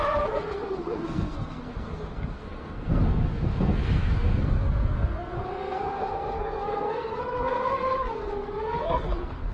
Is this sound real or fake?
fake